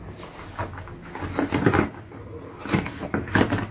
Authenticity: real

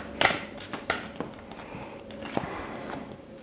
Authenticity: real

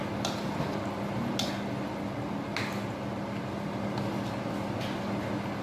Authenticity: real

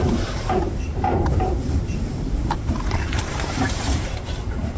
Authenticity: fake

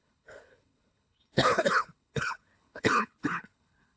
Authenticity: fake